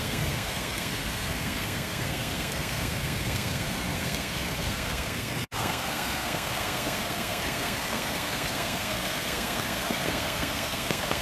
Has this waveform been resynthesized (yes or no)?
yes